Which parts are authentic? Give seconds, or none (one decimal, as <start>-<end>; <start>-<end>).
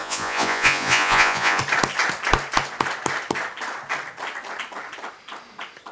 1.6-5.9